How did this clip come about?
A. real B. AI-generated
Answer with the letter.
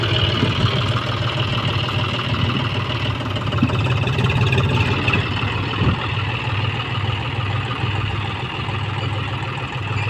A